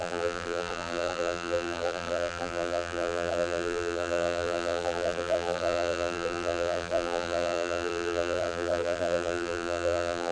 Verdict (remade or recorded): remade